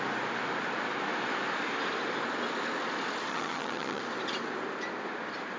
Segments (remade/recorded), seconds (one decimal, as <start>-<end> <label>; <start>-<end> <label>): 0.0-3.3 recorded; 3.3-4.0 remade; 4.0-5.6 recorded